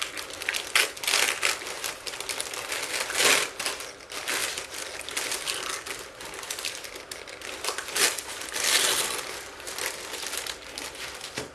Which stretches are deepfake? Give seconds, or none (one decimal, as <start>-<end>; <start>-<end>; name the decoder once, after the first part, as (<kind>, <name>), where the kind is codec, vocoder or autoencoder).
none